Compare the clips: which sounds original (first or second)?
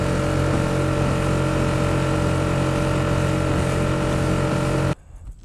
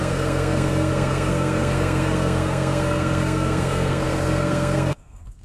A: first